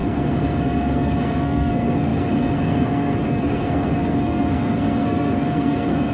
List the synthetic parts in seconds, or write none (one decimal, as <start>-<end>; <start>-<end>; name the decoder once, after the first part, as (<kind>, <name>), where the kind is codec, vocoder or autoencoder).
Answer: 0.0-6.1 (codec, SNAC)